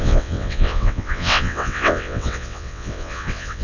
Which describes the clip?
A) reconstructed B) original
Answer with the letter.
A